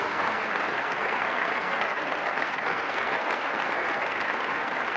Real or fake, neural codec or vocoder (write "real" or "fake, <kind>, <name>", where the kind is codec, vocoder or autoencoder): fake, codec, SNAC